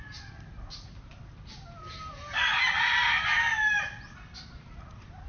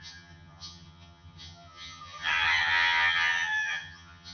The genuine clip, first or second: first